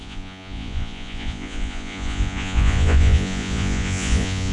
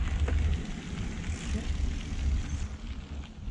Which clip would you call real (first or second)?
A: second